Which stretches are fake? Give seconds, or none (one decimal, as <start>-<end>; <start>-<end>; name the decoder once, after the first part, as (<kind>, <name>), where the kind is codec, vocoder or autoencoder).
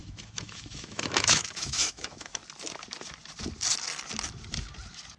0.0-2.4 (autoencoder, DAC-VAE)